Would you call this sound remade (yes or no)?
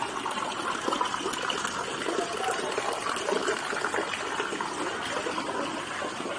no